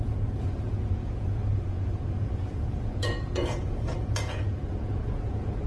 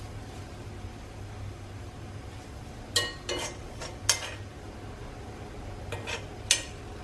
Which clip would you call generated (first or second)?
first